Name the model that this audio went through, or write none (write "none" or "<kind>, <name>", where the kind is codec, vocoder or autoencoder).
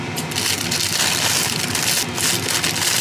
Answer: none